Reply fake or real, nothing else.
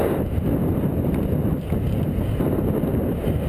real